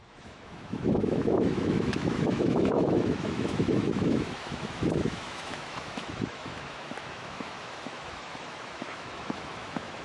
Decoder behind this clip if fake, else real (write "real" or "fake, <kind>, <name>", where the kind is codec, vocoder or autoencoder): fake, autoencoder, DAC-VAE